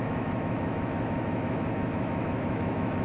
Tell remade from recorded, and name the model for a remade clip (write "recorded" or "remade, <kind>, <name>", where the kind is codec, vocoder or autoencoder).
remade, autoencoder, DAC-VAE